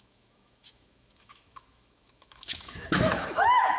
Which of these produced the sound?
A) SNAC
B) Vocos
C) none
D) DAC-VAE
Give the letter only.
D